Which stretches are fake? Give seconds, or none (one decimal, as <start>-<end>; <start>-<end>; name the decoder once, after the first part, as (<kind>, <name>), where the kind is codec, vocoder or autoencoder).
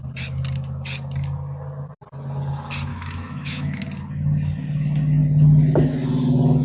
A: 2.9-3.8 (autoencoder, DAC-VAE)